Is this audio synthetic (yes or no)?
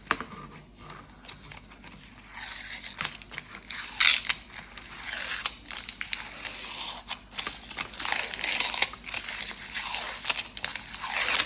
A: no